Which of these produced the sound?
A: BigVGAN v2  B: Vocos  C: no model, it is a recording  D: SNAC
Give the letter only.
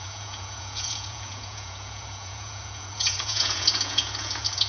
B